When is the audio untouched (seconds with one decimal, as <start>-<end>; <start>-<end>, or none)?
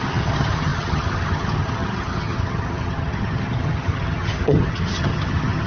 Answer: none